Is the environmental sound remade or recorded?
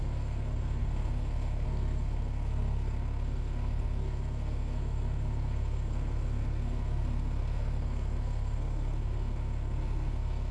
remade